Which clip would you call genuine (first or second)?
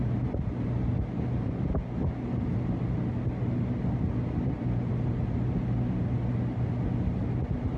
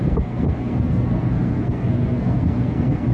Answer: first